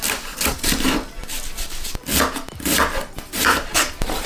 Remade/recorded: remade